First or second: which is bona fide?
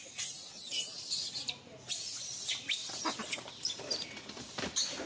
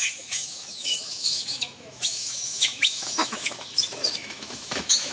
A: first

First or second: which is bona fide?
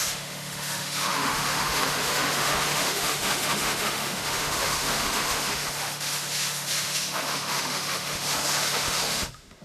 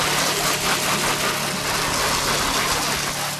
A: second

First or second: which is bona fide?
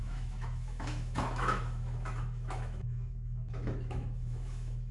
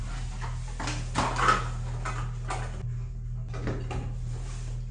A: second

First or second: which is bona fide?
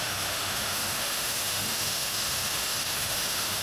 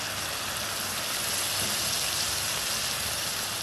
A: second